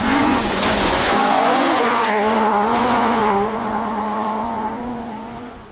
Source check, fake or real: fake